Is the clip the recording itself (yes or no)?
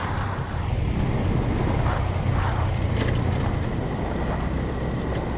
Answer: yes